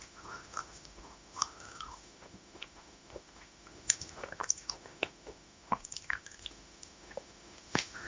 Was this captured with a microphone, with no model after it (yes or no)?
no